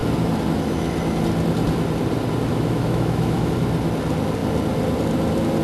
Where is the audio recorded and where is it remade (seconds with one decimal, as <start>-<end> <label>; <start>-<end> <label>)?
0.0-2.5 recorded; 2.5-3.5 remade; 3.5-5.6 recorded